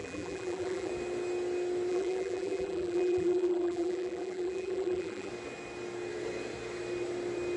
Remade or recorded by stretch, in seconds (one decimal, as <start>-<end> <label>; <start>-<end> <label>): 0.0-0.9 remade; 0.9-1.9 recorded; 1.9-5.3 remade; 5.3-7.6 recorded